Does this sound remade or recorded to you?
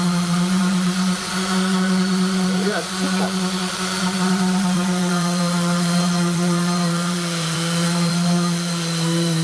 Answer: remade